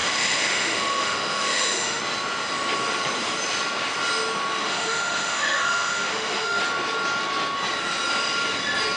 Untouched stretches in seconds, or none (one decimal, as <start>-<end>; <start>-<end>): 2.0-4.6; 6.6-9.0